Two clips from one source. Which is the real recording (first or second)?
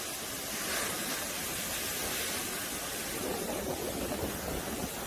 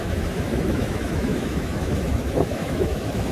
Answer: first